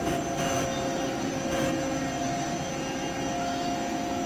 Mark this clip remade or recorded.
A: recorded